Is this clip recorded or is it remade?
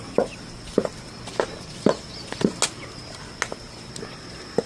recorded